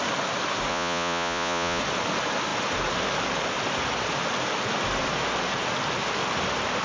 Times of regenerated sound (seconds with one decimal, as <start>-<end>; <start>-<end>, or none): 0.7-1.8